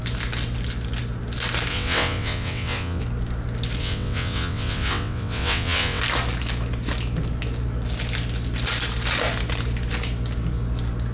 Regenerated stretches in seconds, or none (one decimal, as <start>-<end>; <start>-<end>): 1.7-3.0; 3.8-6.0